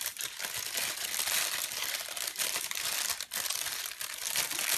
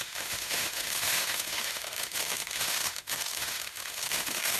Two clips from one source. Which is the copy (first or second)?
second